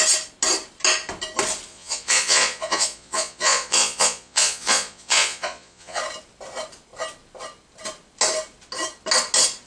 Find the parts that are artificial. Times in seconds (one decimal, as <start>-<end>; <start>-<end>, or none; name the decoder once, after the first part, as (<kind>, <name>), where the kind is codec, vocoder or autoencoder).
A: 1.7-6.0 (vocoder, Vocos)